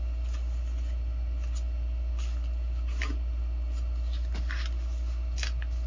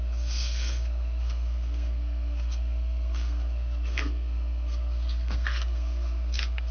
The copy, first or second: second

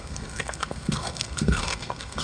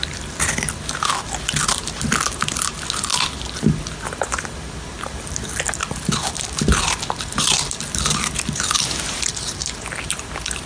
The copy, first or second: first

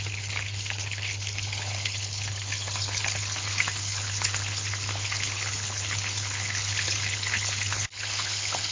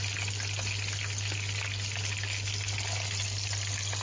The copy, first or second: first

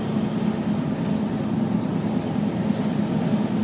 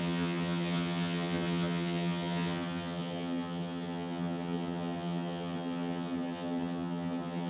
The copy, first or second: second